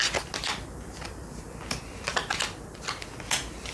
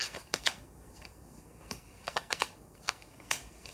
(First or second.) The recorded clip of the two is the first